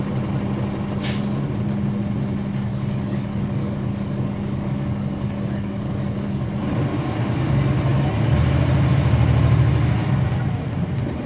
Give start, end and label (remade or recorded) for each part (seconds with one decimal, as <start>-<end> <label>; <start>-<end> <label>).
0.0-2.7 recorded; 2.7-6.6 remade; 6.6-11.3 recorded